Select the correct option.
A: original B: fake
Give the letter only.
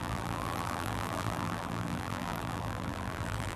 B